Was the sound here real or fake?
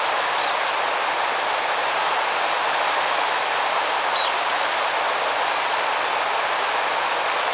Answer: real